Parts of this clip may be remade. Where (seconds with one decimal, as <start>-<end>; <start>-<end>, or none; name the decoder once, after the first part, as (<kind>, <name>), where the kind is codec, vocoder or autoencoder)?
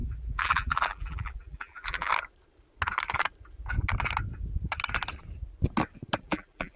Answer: 0.0-2.1 (vocoder, BigVGAN v2); 6.2-6.8